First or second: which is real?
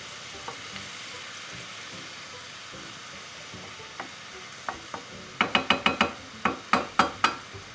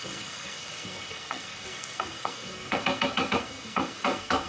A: first